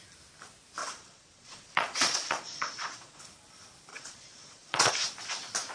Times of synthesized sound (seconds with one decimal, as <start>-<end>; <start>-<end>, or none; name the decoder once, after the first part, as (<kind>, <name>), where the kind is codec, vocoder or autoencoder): 0.8-3.2 (vocoder, Vocos); 3.9-4.9